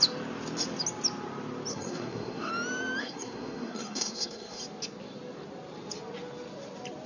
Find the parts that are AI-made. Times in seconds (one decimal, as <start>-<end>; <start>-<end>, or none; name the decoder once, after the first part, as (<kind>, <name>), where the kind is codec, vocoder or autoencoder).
1.7-2.5 (codec, SNAC); 3.0-4.6